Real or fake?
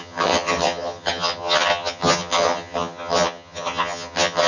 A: fake